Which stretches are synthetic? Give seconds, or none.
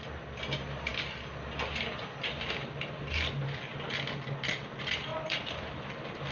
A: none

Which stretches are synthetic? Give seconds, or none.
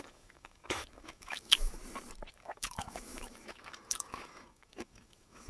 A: 0.0-1.8 (autoencoder, DAC-VAE); 2.3-5.5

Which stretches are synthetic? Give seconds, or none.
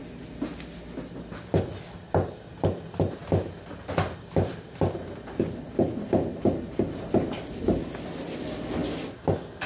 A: none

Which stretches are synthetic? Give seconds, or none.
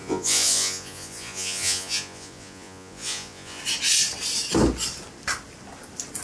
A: 0.0-3.6 (vocoder, Vocos)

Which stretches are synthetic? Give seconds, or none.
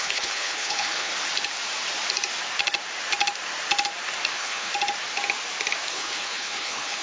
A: 0.0-1.1 (codec, HILCodec); 4.3-4.7; 5.9-7.0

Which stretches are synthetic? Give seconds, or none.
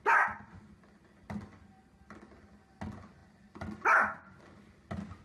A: none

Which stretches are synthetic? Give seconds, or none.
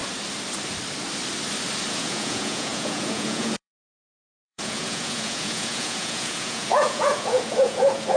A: 1.9-8.2 (vocoder, Vocos)